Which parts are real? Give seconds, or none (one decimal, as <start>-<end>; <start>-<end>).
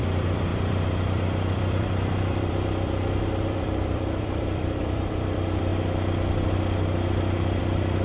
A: 5.7-7.6